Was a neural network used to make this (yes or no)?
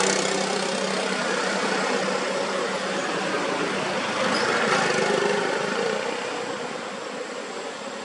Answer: no